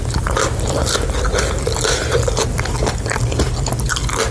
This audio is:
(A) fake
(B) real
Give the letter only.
B